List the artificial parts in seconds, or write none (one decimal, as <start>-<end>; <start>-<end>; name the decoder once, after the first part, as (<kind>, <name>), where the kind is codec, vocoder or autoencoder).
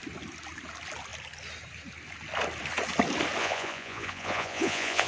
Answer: 3.4-5.1 (vocoder, Vocos)